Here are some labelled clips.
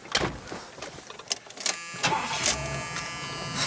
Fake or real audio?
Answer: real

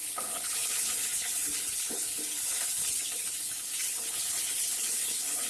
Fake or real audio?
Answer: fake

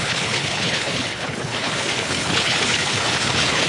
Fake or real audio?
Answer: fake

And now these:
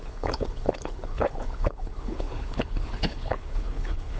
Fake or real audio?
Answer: fake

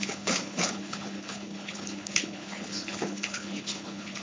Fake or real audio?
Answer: fake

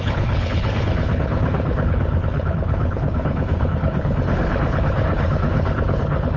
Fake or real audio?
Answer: fake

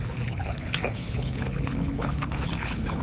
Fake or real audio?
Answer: fake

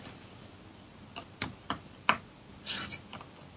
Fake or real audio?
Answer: real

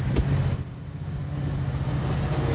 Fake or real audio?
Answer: real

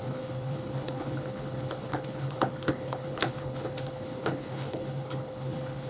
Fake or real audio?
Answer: fake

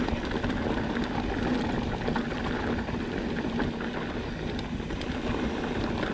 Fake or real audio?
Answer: real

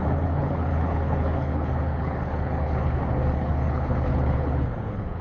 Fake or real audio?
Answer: fake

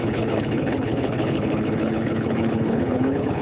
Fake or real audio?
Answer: fake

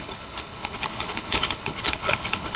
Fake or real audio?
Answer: fake